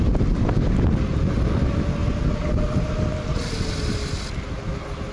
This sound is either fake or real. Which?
real